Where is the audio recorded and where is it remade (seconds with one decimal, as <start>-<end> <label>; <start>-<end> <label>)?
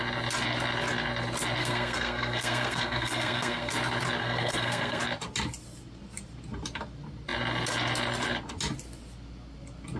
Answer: 0.0-1.6 recorded; 1.6-3.7 remade; 3.7-4.2 recorded; 4.2-5.0 remade; 5.0-10.0 recorded